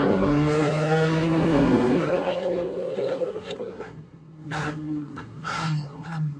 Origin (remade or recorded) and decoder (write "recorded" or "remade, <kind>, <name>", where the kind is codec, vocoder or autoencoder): remade, codec, SNAC